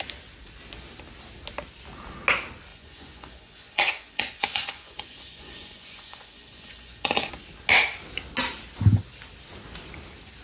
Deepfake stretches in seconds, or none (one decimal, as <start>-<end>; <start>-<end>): 2.7-7.3